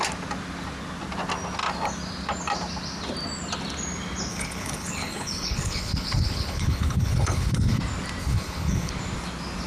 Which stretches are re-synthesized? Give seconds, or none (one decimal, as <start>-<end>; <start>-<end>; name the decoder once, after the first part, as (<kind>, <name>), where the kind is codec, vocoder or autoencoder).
4.3-7.8 (codec, HILCodec); 8.2-8.9